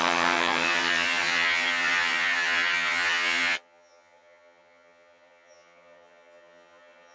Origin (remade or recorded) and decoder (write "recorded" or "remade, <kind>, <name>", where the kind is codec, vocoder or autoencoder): remade, vocoder, HiFi-GAN